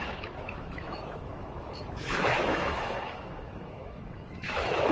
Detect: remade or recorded remade